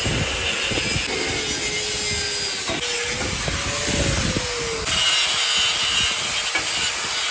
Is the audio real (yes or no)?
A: yes